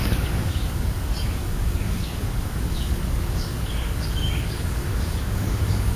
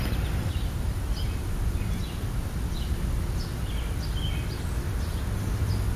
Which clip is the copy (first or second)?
first